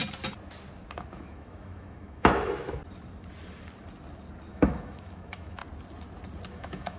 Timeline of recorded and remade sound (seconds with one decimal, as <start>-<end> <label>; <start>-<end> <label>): 0.0-1.1 recorded; 1.1-2.8 remade; 2.8-4.5 recorded; 4.5-5.6 remade; 5.6-6.5 recorded; 6.5-7.0 remade

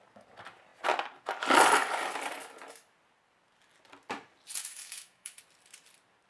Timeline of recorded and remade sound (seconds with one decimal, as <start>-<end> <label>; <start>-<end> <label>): 0.0-4.6 recorded; 4.6-5.4 remade; 5.4-6.3 recorded

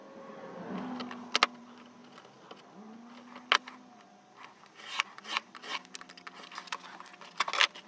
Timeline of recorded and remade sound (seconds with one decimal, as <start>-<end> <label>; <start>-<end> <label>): 0.0-7.9 recorded

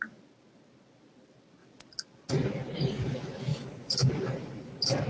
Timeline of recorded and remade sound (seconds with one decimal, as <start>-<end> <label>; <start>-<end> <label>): 0.0-3.5 recorded; 3.5-4.1 remade; 4.1-5.1 recorded